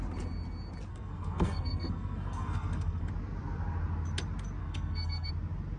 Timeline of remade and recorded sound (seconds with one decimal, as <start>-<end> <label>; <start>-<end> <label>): 0.0-0.9 recorded; 0.9-3.1 remade; 3.1-4.6 recorded; 4.6-5.3 remade; 5.3-5.8 recorded